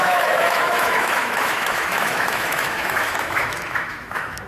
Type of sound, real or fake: fake